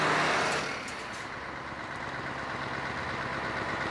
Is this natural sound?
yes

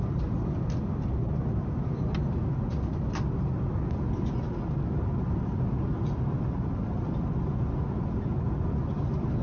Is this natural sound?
yes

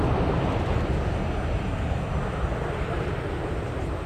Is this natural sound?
yes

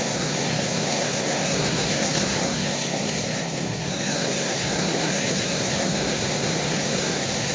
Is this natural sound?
no